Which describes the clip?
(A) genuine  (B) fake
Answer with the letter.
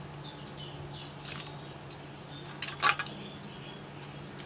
A